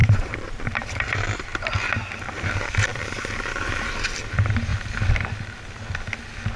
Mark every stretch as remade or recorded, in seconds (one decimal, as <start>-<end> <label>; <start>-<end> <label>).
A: 0.0-1.5 remade; 1.5-2.2 recorded; 2.2-4.7 remade; 4.7-6.6 recorded